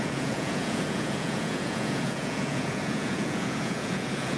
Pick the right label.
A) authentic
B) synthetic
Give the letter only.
B